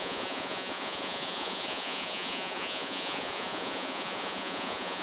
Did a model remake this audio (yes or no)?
yes